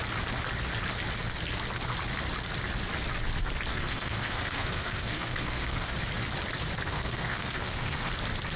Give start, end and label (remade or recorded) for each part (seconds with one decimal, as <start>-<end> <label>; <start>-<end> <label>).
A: 0.0-3.7 recorded; 3.7-5.9 remade; 5.9-6.9 recorded; 6.9-8.1 remade; 8.1-8.6 recorded